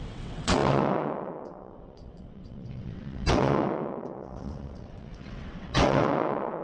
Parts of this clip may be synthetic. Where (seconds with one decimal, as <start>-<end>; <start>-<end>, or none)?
0.0-6.6

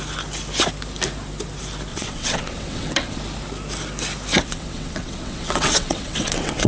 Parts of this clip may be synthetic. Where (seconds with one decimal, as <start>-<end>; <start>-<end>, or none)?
1.9-3.2; 4.3-6.7

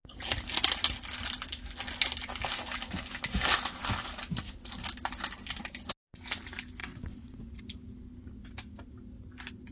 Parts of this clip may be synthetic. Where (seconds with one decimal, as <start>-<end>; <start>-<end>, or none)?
6.8-7.6

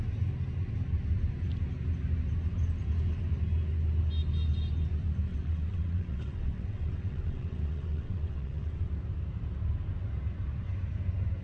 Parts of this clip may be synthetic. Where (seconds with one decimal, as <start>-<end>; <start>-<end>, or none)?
5.3-8.9